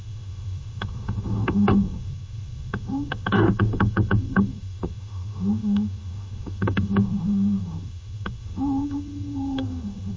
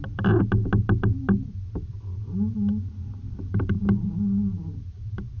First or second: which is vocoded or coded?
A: first